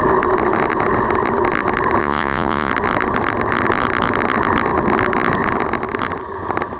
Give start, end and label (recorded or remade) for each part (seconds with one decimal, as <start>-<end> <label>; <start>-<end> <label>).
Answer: 0.0-2.0 recorded; 2.0-2.7 remade; 2.7-6.8 recorded

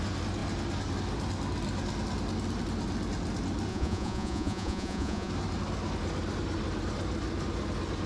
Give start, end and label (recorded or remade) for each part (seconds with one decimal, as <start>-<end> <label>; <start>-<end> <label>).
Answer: 0.0-3.7 recorded; 3.7-5.3 remade; 5.3-8.1 recorded